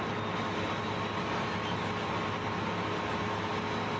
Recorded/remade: recorded